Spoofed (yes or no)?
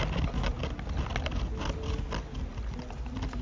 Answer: no